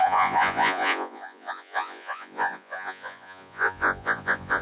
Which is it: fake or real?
fake